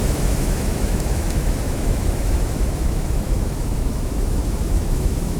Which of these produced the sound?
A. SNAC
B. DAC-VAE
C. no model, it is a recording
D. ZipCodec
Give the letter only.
B